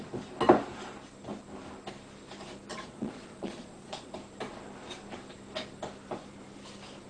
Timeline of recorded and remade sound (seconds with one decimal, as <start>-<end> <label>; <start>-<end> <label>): 0.0-2.7 recorded; 2.7-4.1 remade; 4.1-7.1 recorded